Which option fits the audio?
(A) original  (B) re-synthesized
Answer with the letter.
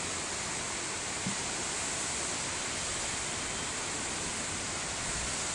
A